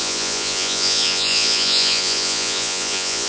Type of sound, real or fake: fake